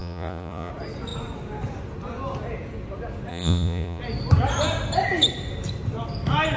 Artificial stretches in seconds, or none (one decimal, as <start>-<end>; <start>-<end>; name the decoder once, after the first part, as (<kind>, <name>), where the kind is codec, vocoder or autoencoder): 0.0-0.7 (vocoder, Vocos); 3.3-4.0